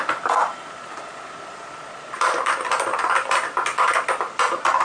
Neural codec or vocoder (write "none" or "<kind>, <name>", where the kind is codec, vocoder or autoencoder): vocoder, BigVGAN v2